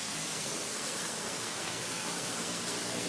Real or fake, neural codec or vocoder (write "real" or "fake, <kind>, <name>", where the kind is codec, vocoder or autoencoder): fake, codec, SNAC